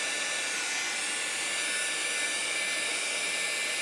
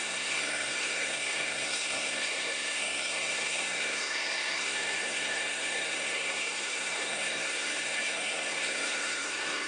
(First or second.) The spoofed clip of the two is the second